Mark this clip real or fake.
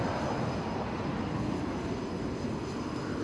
real